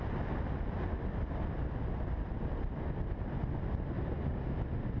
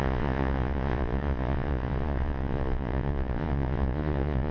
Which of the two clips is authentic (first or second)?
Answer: first